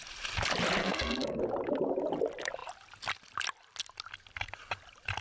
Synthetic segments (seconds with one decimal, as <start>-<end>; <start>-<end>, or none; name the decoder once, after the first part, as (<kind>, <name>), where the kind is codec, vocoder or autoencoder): 0.8-1.4 (codec, SNAC)